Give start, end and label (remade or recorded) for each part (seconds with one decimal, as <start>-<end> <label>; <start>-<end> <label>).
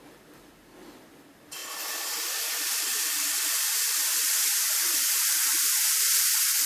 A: 0.0-1.6 recorded; 1.6-5.1 remade; 5.1-6.7 recorded